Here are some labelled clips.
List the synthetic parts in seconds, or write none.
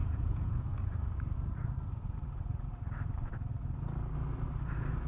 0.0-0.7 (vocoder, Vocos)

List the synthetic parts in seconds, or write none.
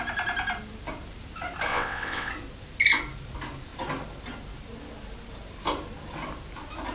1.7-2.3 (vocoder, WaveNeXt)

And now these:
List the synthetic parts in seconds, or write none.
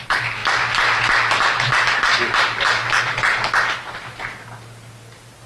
none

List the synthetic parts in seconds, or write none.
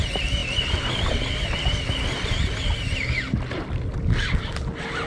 none